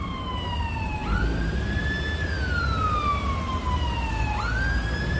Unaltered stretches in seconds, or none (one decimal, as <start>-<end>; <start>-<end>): 0.0-5.2